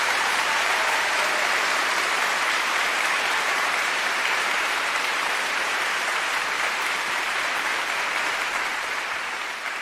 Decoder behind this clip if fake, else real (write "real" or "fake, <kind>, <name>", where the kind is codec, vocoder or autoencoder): fake, vocoder, BigVGAN v2